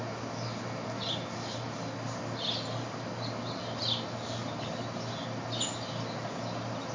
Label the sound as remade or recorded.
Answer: recorded